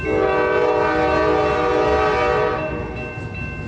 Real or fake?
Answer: real